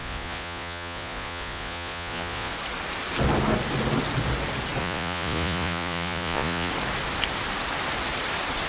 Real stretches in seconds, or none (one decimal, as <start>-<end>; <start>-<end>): 2.5-4.8; 6.7-8.7